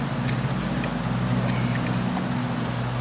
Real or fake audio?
real